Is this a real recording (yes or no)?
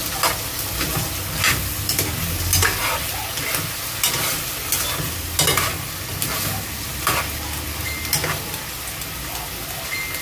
yes